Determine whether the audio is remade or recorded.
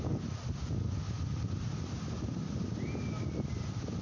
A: recorded